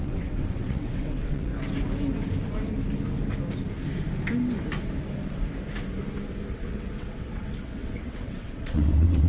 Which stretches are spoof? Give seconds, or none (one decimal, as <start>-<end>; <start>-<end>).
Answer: 0.0-1.5; 6.5-9.3